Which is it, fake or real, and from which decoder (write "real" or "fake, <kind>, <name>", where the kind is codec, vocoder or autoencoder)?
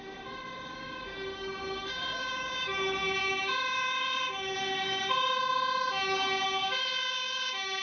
fake, codec, DAC